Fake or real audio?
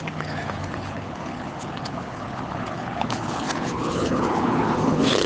fake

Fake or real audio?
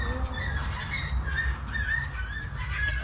real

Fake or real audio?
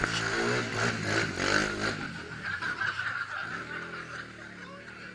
real